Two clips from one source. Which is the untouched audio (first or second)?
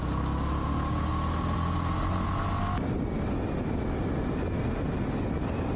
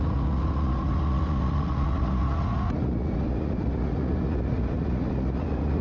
first